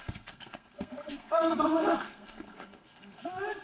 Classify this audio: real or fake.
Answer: fake